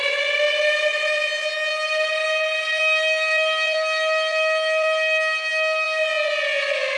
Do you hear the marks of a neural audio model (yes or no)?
no